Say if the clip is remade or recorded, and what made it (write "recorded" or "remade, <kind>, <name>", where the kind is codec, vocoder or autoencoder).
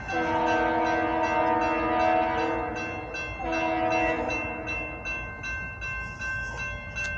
recorded